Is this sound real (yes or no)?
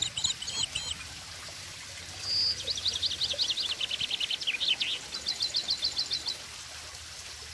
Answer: yes